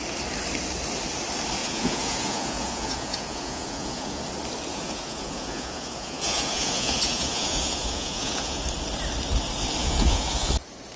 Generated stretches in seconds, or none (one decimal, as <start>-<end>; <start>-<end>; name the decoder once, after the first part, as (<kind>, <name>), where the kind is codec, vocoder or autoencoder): 1.6-4.2 (vocoder, Vocos); 4.7-8.6; 9.8-10.5